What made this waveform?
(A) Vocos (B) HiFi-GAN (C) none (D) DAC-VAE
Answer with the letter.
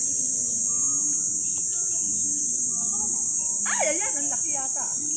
C